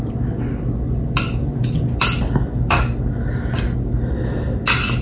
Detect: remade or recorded recorded